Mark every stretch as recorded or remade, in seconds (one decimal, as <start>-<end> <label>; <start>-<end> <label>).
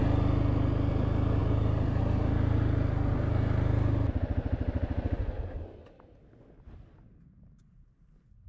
0.0-8.5 recorded